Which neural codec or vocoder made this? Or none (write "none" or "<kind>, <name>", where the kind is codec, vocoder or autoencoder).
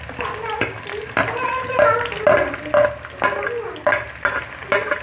none